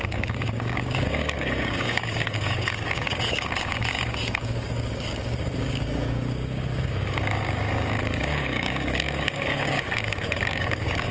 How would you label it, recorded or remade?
remade